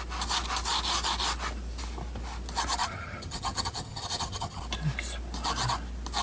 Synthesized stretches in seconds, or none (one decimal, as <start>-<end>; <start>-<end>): 2.8-4.6